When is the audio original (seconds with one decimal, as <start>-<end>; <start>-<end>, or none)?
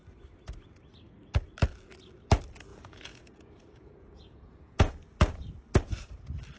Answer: 0.0-2.7; 4.9-6.6